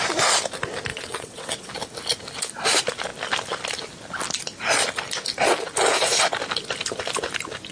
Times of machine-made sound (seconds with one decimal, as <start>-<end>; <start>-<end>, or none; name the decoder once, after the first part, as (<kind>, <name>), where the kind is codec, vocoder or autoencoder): 0.9-1.7 (vocoder, WaveNeXt)